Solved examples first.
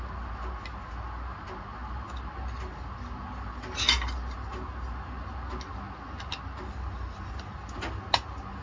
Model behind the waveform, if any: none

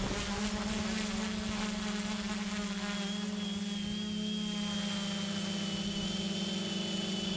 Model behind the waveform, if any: none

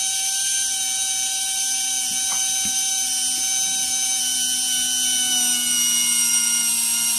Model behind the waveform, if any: none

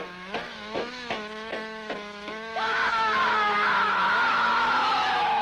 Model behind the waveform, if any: autoencoder, DAC-VAE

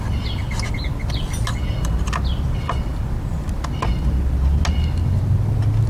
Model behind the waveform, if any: none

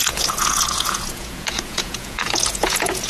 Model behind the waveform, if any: vocoder, Vocos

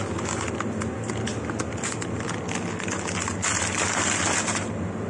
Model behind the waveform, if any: none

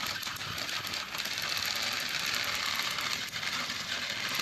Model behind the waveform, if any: none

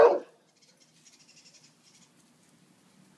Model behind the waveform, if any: none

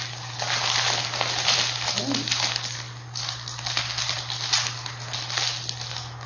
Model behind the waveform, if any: none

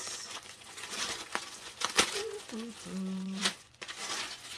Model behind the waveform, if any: vocoder, Vocos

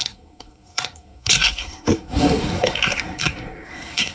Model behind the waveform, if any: codec, SNAC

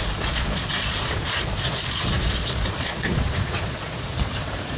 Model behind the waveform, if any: vocoder, Vocos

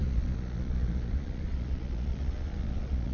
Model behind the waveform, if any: vocoder, Vocos